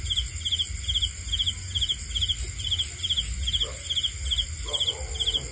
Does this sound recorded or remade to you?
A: recorded